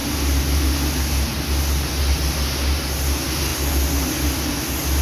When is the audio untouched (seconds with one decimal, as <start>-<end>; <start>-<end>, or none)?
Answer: 0.0-5.0